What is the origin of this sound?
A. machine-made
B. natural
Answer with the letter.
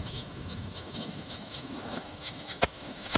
A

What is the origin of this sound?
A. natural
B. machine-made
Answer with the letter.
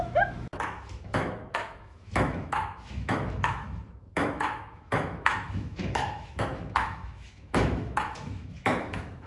B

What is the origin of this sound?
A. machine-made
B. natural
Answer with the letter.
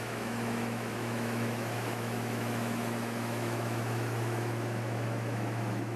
A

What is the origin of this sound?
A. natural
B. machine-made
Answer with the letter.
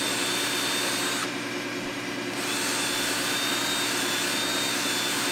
A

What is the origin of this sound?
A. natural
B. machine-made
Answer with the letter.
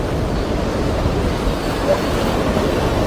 A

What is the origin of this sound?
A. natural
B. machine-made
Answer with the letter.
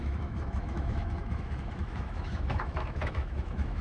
B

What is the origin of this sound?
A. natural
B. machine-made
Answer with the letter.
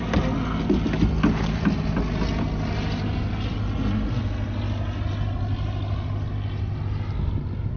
A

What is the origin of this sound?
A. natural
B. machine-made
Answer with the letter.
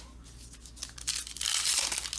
A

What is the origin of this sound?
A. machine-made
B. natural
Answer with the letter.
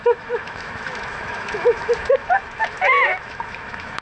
A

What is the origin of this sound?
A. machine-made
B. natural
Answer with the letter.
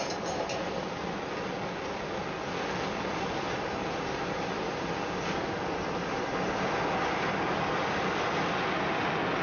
B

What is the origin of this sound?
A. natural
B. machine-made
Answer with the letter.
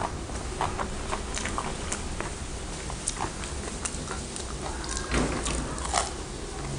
A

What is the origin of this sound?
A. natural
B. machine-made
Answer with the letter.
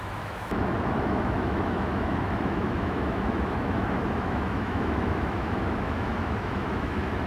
B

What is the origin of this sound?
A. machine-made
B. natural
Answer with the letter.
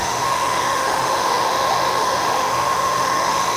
A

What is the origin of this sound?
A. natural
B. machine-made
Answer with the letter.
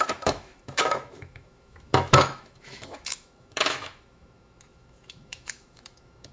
B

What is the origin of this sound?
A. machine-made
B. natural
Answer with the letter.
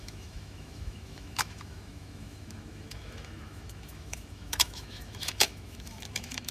A